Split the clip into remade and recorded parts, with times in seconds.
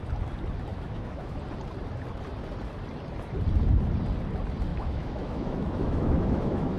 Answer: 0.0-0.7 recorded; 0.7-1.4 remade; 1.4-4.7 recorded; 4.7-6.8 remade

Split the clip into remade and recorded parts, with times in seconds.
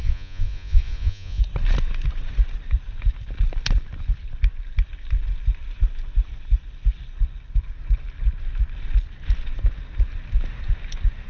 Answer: 0.0-1.4 remade; 1.4-11.3 recorded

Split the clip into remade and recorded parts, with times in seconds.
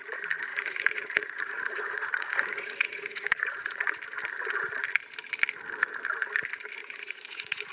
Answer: 0.0-0.5 recorded; 0.5-3.9 remade; 3.9-6.8 recorded; 6.8-7.7 remade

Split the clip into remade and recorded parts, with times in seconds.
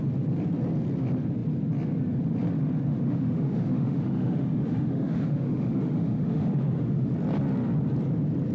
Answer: 0.0-2.9 recorded; 2.9-7.1 remade; 7.1-8.5 recorded